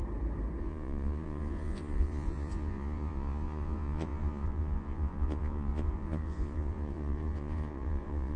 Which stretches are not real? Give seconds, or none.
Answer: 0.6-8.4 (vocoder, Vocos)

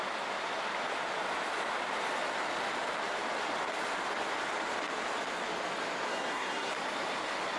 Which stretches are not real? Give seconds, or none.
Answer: 6.1-6.7 (codec, SNAC)

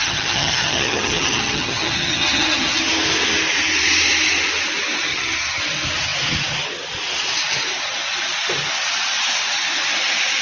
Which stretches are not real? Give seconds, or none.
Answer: 0.0-2.8 (vocoder, HiFi-GAN); 5.1-5.6

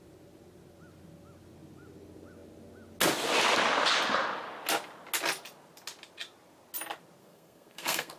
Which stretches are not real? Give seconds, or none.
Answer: 7.2-8.2 (codec, SNAC)

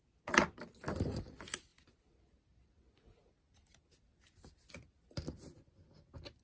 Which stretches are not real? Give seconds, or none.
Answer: none

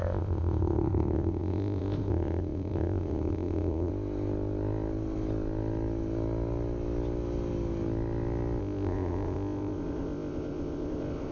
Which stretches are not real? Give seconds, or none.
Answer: 0.0-3.9 (codec, ZipCodec); 8.6-11.3

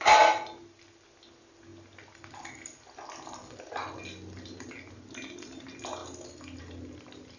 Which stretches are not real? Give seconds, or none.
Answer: none

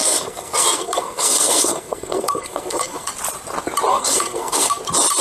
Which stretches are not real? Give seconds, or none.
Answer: 0.0-3.1 (codec, SNAC); 3.9-4.8